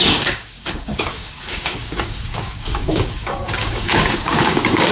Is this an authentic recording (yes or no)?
no